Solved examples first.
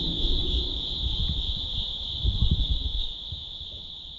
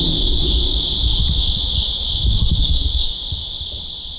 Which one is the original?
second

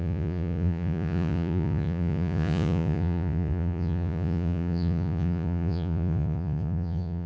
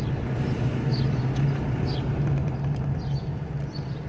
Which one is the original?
second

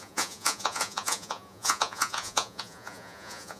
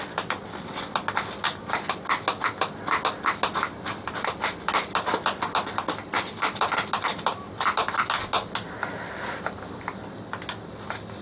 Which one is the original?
second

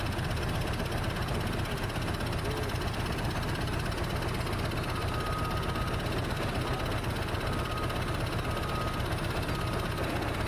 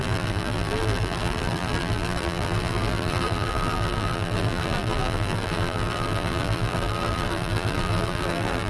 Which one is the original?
first